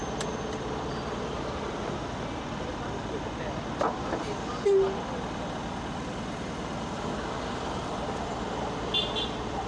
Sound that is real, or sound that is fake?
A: real